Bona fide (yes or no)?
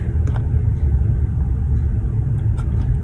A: yes